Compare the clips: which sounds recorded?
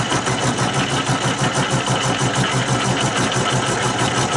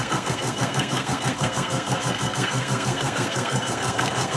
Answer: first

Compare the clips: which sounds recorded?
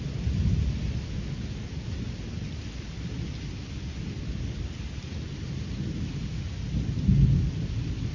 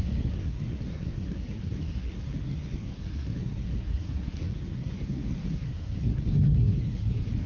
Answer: first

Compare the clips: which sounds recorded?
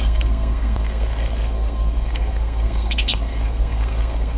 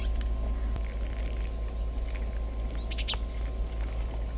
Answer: second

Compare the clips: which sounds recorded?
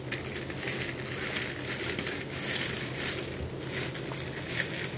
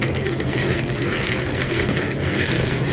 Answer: first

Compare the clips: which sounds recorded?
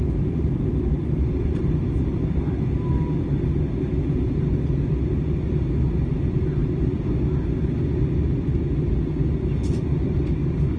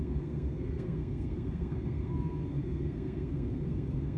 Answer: first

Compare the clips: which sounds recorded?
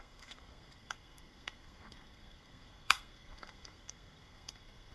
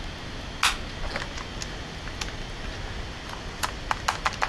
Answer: second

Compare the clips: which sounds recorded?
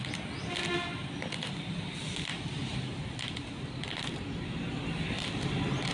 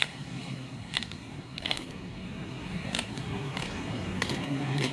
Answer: first